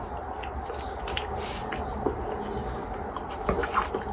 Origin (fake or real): real